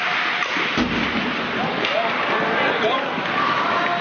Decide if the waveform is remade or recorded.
recorded